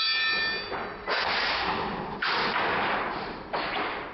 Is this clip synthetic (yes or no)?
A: no